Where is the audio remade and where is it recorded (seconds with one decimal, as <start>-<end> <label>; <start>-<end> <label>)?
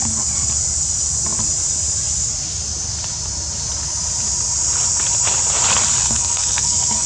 0.0-6.0 recorded; 6.0-7.1 remade